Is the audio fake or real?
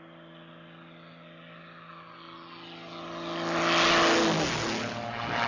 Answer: real